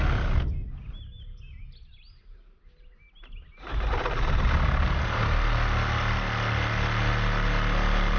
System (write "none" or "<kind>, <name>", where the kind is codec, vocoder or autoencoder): none